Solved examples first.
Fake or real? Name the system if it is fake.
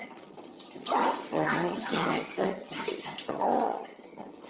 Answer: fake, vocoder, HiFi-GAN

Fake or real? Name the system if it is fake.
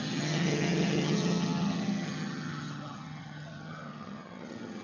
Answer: fake, vocoder, HiFi-GAN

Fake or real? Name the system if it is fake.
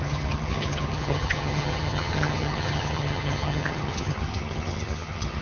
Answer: fake, vocoder, HiFi-GAN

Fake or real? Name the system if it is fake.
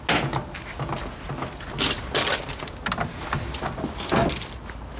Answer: real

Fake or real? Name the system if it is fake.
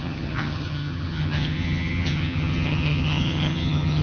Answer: fake, vocoder, HiFi-GAN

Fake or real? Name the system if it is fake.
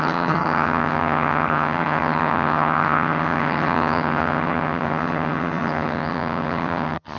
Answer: fake, vocoder, HiFi-GAN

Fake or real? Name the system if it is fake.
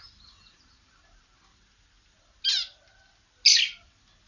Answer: real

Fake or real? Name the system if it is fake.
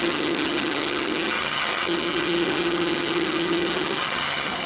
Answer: fake, vocoder, HiFi-GAN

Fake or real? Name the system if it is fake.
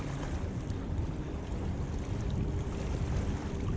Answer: real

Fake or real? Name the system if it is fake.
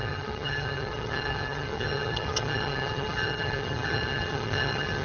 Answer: fake, vocoder, HiFi-GAN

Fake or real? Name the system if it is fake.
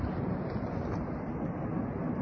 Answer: real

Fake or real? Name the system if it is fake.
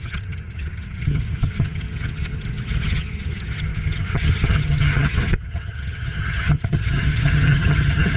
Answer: fake, vocoder, HiFi-GAN